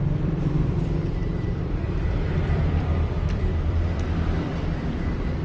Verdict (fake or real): fake